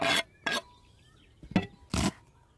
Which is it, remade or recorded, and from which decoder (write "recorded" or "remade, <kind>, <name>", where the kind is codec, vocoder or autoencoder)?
recorded